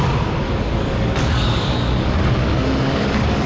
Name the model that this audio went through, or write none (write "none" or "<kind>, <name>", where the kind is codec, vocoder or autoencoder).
codec, DAC